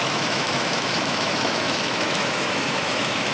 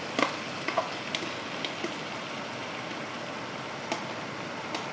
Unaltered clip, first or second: second